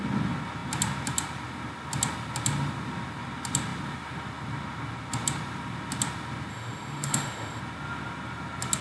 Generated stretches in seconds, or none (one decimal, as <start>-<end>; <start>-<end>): 6.5-7.6